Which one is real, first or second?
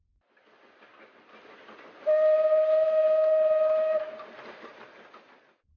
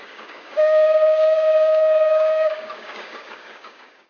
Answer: first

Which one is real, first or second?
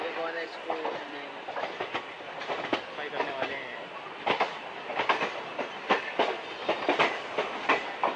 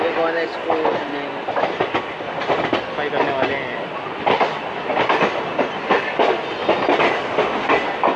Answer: second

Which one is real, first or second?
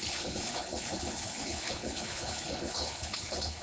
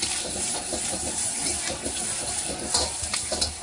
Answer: second